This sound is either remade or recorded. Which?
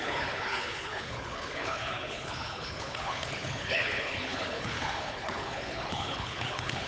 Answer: remade